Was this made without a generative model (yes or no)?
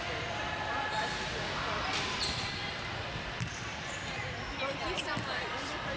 yes